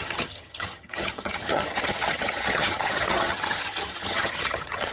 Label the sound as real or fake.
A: fake